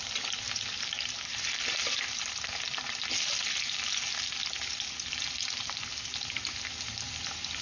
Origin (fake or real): real